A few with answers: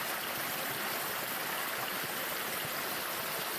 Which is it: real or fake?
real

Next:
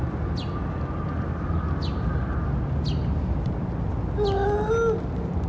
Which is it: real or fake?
real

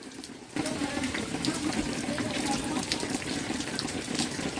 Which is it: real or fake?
fake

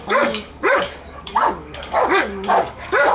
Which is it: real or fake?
fake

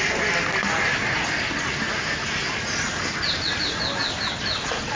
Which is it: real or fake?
real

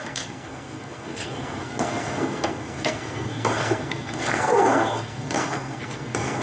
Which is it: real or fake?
fake